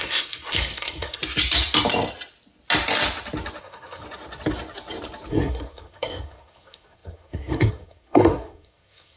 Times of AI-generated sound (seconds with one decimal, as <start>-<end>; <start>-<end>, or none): 0.0-1.2; 3.6-4.0; 5.3-9.2